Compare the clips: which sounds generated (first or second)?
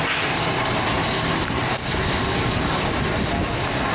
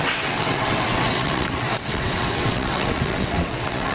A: second